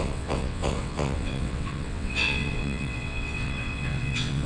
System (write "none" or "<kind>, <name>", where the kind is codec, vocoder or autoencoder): vocoder, WaveNeXt